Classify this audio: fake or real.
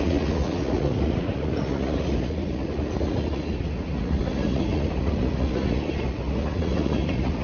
fake